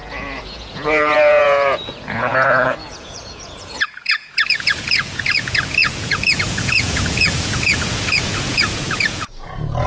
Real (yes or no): no